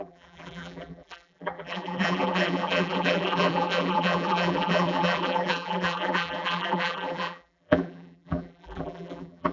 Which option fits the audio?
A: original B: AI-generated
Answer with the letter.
B